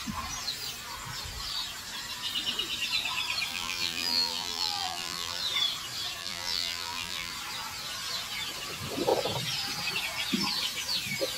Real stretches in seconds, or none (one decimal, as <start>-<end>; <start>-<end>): 0.0-3.5; 5.4-6.2; 7.3-11.4